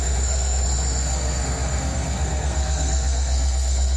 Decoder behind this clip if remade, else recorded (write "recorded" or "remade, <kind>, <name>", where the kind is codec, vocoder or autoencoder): remade, codec, SNAC